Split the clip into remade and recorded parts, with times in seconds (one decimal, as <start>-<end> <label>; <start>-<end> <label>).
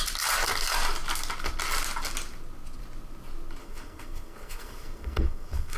0.0-3.6 recorded; 3.6-5.8 remade